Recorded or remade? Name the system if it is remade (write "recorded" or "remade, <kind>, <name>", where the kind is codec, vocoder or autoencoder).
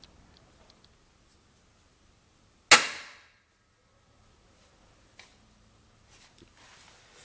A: recorded